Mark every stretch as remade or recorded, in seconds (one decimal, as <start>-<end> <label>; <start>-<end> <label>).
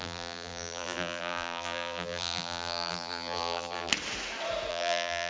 0.0-3.9 remade; 3.9-4.7 recorded; 4.7-5.3 remade